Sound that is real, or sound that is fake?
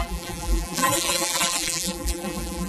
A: fake